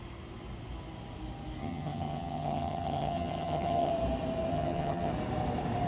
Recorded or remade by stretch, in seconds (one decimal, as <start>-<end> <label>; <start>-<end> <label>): 0.0-1.6 recorded; 1.6-3.9 remade; 3.9-4.5 recorded; 4.5-5.1 remade; 5.1-5.9 recorded